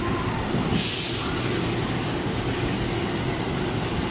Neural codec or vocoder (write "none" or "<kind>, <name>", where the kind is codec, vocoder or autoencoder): none